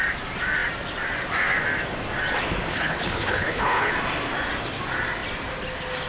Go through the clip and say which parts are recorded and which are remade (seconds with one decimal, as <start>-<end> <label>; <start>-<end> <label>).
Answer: 0.0-2.7 recorded; 2.7-3.9 remade; 3.9-6.1 recorded